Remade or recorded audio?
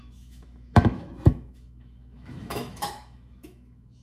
remade